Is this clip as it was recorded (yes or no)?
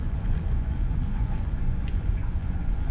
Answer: no